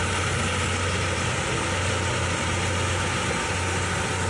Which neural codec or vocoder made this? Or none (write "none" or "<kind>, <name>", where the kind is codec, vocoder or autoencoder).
none